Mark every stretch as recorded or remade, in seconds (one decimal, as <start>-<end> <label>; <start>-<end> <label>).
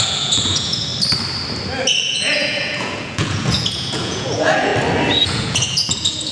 0.0-0.9 remade; 0.9-2.0 recorded; 2.0-4.7 remade; 4.7-5.2 recorded; 5.2-6.3 remade